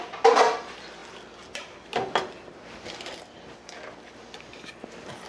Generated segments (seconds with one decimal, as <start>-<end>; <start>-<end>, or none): none